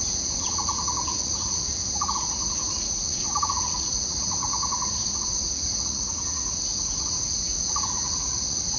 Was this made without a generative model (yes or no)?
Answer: no